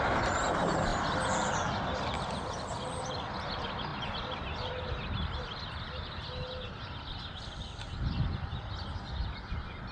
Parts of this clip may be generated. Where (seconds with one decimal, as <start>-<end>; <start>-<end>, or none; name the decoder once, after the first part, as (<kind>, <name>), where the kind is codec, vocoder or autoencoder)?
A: none